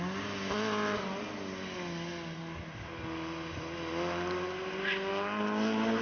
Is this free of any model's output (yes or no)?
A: yes